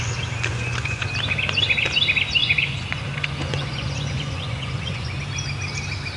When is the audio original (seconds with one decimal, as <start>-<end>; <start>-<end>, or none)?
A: 0.0-0.5; 1.1-2.4; 5.2-6.2